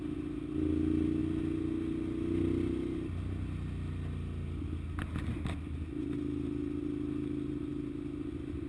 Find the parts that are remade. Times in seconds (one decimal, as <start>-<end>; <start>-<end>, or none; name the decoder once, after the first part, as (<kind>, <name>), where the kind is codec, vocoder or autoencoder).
none